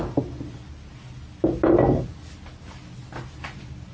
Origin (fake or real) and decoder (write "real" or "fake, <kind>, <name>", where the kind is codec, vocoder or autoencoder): real